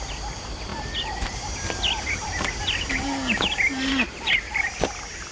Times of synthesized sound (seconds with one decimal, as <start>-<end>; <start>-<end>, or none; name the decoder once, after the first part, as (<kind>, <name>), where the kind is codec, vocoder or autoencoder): none